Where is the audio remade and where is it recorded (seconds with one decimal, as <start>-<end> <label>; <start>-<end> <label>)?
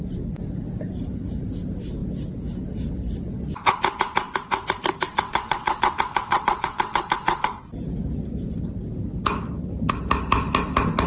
0.0-5.1 recorded; 5.1-7.7 remade; 7.7-11.1 recorded